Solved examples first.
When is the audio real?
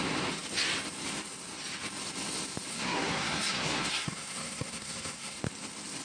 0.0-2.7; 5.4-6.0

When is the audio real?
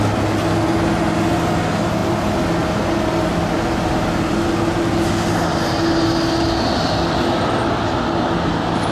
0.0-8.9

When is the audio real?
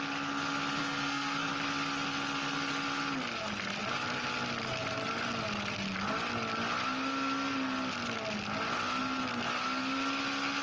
0.0-0.8; 1.5-10.6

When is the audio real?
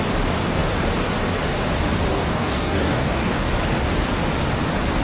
0.0-2.1; 3.5-5.0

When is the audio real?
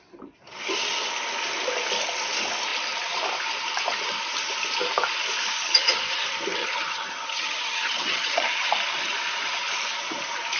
0.0-5.5; 6.0-6.6; 8.7-10.6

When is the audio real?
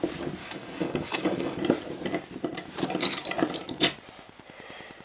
0.0-0.4; 1.6-5.0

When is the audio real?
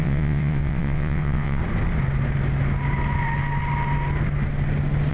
1.6-5.1